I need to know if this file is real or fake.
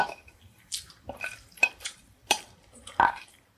fake